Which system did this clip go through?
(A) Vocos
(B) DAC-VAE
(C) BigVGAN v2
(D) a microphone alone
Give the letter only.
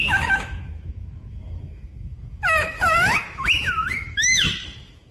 B